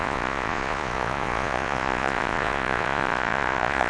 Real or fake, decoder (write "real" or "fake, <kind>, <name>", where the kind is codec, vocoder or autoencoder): fake, vocoder, Vocos